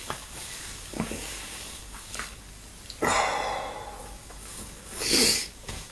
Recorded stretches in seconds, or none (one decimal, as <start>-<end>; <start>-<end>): 2.7-4.0